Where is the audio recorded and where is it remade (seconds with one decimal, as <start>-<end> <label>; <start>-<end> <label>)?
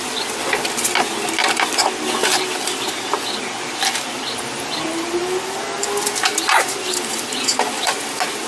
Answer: 0.0-1.4 recorded; 1.4-3.1 remade; 3.1-6.3 recorded; 6.3-7.9 remade; 7.9-8.5 recorded